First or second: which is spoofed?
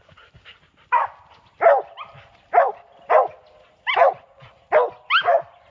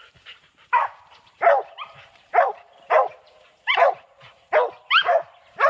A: second